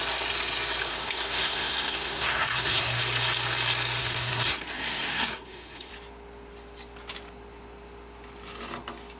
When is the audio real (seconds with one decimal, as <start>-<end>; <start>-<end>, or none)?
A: 0.0-0.9; 3.0-4.0; 5.9-9.2